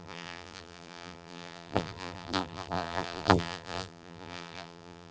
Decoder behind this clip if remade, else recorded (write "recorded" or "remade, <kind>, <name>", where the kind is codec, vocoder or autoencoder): remade, vocoder, BigVGAN v2